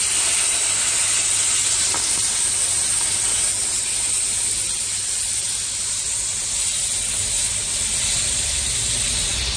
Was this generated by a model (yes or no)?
no